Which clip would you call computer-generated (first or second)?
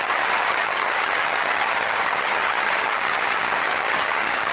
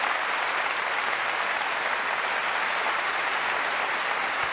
first